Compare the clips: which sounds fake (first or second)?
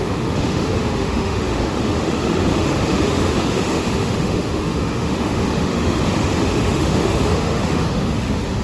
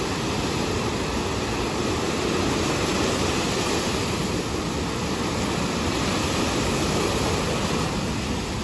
first